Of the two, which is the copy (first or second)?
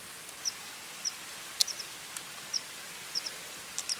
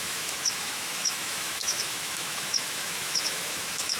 second